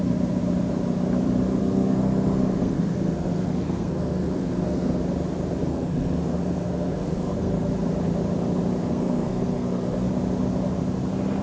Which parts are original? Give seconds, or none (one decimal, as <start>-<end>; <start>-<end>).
0.0-1.6; 5.0-5.7; 7.7-8.8; 10.1-11.4